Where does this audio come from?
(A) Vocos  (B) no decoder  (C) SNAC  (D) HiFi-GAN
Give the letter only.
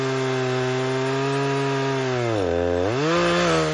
B